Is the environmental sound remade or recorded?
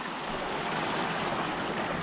recorded